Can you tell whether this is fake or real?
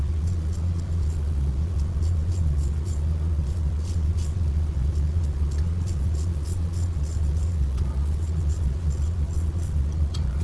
fake